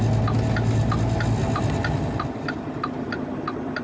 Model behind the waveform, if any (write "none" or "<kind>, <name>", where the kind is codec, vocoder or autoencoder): none